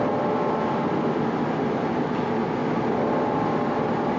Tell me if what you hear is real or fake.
real